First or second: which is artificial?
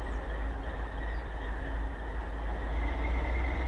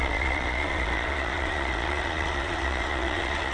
second